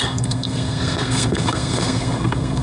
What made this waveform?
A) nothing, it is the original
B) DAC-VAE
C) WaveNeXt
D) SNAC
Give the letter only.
D